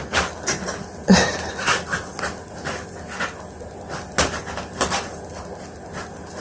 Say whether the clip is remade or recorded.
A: recorded